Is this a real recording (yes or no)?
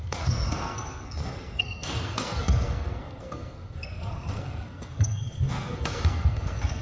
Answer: no